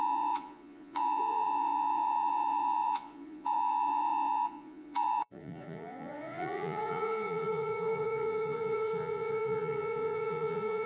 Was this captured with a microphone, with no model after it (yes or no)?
no